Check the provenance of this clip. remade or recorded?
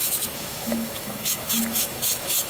remade